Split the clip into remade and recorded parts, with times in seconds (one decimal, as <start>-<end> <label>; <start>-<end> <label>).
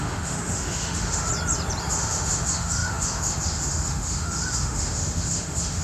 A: 0.0-1.3 remade; 1.3-1.9 recorded; 1.9-5.8 remade